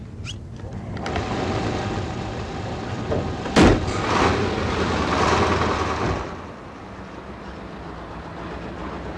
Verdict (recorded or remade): recorded